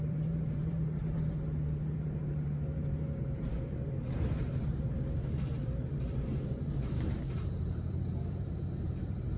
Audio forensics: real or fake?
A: fake